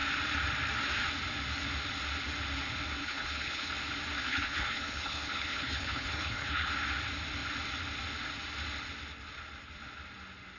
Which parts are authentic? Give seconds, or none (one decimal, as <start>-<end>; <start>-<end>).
0.0-3.0; 3.7-4.2; 6.7-10.6